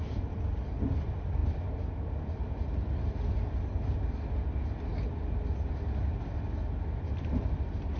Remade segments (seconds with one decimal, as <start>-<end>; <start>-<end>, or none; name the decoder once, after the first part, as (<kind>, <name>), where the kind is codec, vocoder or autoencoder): none